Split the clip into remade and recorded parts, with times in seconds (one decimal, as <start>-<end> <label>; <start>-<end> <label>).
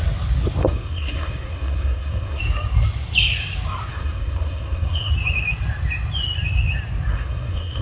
0.0-0.6 recorded; 0.6-2.4 remade; 2.4-3.9 recorded; 3.9-5.1 remade; 5.1-7.1 recorded; 7.1-7.8 remade